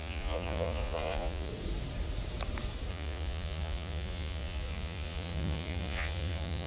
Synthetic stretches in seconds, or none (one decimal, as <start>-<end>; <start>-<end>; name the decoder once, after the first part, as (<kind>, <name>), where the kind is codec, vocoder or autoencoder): 0.0-1.5 (vocoder, Vocos); 2.9-6.7